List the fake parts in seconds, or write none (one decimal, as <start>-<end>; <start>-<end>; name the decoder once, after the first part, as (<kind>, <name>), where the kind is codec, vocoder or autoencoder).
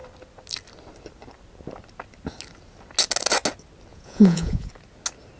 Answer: 3.9-4.7 (vocoder, Vocos)